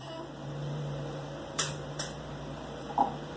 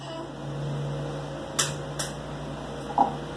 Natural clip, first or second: second